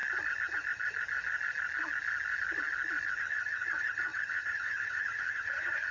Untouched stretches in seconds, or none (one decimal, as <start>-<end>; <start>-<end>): 0.0-3.2

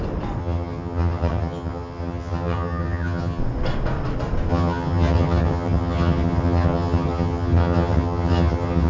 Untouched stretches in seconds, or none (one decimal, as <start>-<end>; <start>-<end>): 0.0-0.4; 3.4-4.5

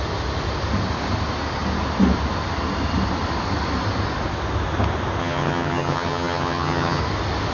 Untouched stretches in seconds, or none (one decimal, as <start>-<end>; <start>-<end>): 0.0-5.2; 7.0-7.5

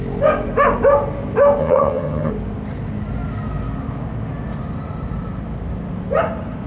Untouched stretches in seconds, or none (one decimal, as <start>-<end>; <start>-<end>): 0.0-1.6; 2.3-6.7